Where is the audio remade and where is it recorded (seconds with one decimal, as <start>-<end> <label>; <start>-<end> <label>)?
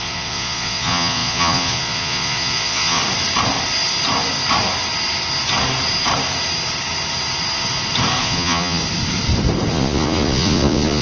0.0-3.0 remade; 3.0-8.2 recorded; 8.2-8.8 remade; 8.8-9.7 recorded; 9.7-11.0 remade